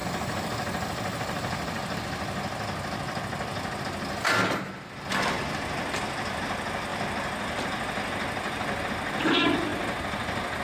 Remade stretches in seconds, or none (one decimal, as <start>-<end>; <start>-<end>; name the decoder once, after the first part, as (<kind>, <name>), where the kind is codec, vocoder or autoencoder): none